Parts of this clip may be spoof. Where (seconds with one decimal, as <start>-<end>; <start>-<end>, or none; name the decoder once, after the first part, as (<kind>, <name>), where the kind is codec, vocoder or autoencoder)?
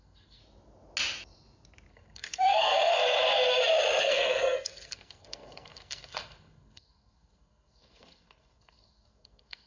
0.0-0.4 (codec, SNAC); 1.9-2.9; 4.0-9.7